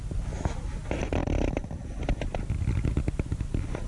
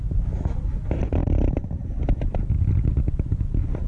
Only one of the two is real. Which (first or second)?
first